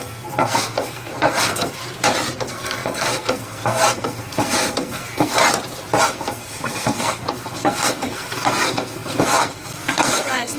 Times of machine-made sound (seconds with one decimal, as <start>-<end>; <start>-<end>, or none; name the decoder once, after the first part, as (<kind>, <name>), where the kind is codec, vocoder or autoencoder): 0.0-1.8 (codec, SNAC); 2.4-5.4; 6.0-10.6